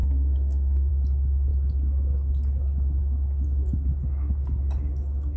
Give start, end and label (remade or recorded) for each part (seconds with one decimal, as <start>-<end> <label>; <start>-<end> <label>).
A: 0.0-0.9 remade; 0.9-5.4 recorded